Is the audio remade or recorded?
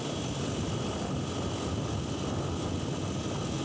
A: recorded